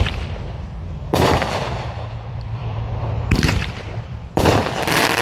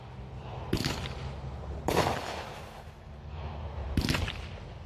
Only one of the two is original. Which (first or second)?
second